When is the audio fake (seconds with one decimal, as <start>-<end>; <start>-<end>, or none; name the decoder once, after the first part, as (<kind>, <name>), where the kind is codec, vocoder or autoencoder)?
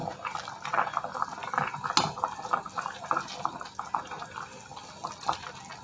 none